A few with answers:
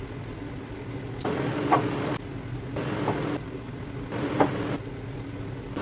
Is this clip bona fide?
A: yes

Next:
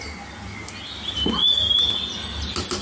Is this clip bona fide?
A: yes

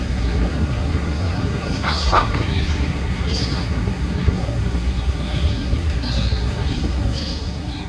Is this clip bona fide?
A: no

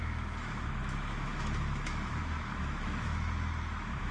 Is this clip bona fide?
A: no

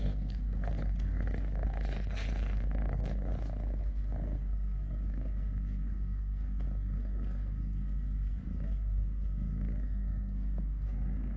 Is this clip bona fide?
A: no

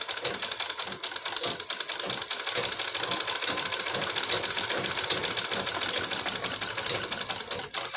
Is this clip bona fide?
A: yes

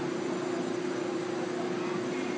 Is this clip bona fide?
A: yes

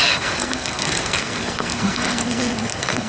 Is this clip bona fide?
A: no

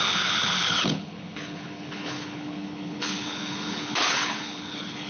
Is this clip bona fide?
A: no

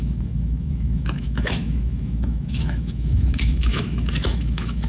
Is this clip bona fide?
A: no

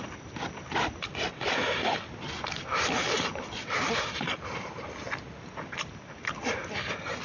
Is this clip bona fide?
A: yes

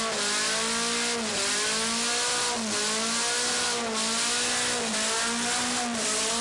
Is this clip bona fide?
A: yes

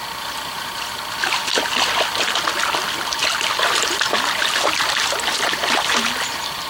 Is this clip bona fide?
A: yes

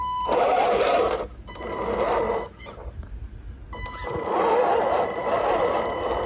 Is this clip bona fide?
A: yes